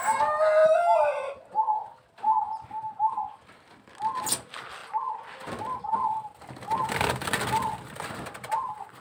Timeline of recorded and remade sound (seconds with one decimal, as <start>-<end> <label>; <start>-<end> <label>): 0.0-9.0 recorded